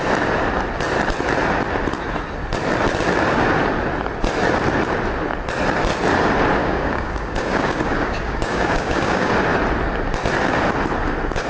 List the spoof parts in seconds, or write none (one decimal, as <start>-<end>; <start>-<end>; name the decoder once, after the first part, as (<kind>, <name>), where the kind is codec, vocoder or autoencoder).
6.6-9.3 (codec, DAC)